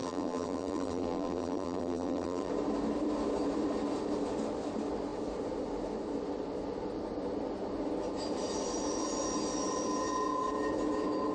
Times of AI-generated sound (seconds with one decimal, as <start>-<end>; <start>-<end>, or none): 0.0-2.5